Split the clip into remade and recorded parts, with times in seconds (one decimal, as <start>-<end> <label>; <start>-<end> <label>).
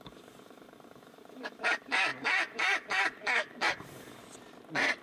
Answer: 0.0-4.2 remade; 4.2-5.0 recorded